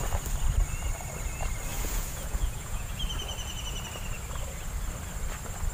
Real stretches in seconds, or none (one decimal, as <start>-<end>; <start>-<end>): 0.0-1.7; 2.9-5.7